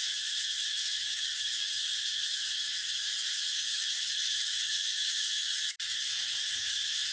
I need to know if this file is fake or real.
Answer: fake